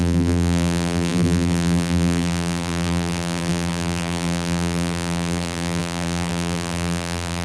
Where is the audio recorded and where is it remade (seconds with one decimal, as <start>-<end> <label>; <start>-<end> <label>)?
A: 0.0-7.4 remade

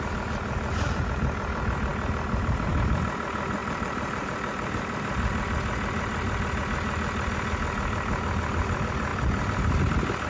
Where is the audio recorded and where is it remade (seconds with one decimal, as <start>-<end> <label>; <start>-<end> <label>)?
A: 0.0-3.6 recorded; 3.6-6.6 remade; 6.6-10.3 recorded

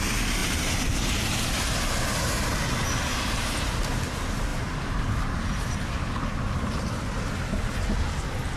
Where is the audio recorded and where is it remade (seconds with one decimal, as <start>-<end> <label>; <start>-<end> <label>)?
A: 0.0-0.4 recorded; 0.4-3.7 remade; 3.7-4.5 recorded; 4.5-7.3 remade; 7.3-8.6 recorded

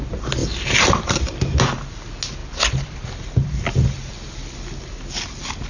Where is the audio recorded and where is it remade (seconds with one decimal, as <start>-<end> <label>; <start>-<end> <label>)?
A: 0.0-0.4 recorded; 0.4-1.2 remade; 1.2-2.4 recorded; 2.4-4.1 remade; 4.1-5.7 recorded